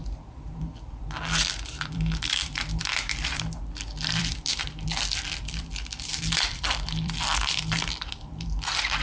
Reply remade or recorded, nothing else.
remade